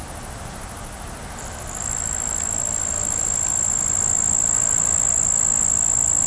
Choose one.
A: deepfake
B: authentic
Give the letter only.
B